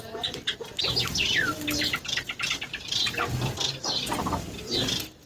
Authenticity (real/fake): real